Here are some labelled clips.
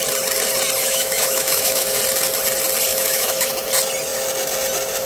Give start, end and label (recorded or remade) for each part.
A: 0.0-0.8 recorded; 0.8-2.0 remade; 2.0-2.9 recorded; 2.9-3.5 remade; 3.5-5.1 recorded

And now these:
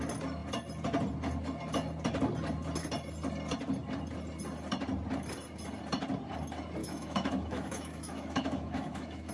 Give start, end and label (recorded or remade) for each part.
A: 0.0-6.8 recorded; 6.8-9.3 remade

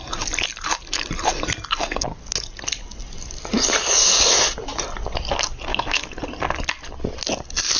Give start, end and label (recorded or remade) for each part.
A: 0.0-5.7 recorded; 5.7-6.2 remade; 6.2-7.8 recorded

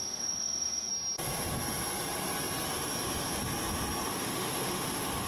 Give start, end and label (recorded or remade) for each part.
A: 0.0-0.9 remade; 0.9-4.1 recorded; 4.1-5.3 remade

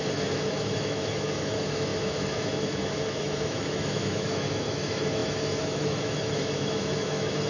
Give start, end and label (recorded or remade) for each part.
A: 0.0-7.5 remade

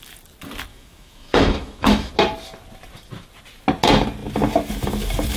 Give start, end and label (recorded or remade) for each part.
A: 0.0-0.7 recorded; 0.7-2.1 remade; 2.1-5.4 recorded

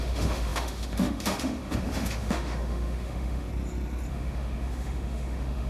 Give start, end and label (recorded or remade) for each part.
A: 0.0-3.5 remade; 3.5-4.1 recorded; 4.1-5.7 remade